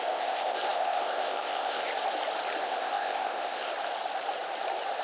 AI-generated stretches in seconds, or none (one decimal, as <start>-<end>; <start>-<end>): 0.0-1.9; 2.6-3.7